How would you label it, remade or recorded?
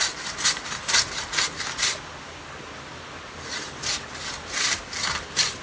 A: recorded